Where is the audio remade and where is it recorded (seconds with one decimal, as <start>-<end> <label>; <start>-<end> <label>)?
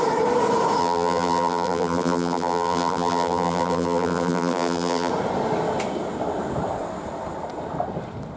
0.0-0.8 recorded; 0.8-5.1 remade; 5.1-8.4 recorded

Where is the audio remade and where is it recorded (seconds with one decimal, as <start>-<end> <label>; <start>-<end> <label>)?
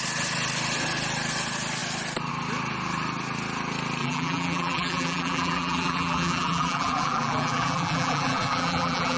0.0-4.0 recorded; 4.0-9.2 remade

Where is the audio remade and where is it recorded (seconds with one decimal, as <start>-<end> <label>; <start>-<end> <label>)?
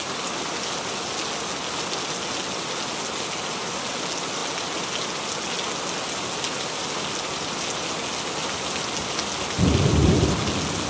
0.0-10.9 recorded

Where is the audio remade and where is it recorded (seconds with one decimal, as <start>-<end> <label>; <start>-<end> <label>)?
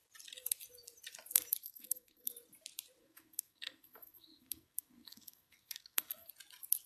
0.0-1.6 recorded; 1.6-2.3 remade; 2.3-3.0 recorded; 3.0-6.3 remade; 6.3-6.9 recorded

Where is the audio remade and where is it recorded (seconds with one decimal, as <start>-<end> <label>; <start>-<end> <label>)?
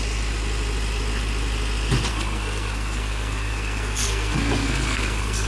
0.0-2.1 recorded; 2.1-5.5 remade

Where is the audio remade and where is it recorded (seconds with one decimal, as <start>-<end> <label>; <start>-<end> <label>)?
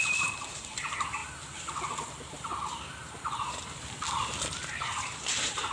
0.0-1.2 remade; 1.2-2.1 recorded; 2.1-2.5 remade; 2.5-4.8 recorded; 4.8-5.7 remade